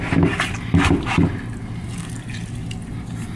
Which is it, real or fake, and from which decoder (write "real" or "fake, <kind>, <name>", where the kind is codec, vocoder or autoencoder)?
real